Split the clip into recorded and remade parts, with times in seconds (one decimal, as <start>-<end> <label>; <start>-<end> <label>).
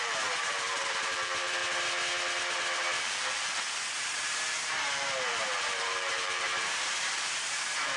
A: 0.0-1.6 remade; 1.6-3.6 recorded; 3.6-8.0 remade